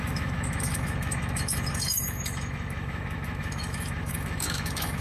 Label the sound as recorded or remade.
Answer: remade